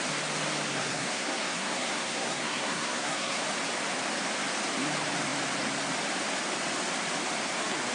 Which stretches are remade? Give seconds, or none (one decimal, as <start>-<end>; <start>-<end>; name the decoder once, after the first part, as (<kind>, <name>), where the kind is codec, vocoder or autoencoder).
0.7-3.4 (codec, SNAC)